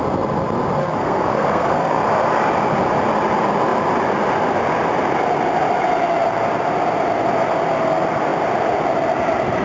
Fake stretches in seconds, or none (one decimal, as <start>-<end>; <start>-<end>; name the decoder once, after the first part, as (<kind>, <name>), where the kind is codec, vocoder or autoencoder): 0.8-2.0 (codec, SNAC)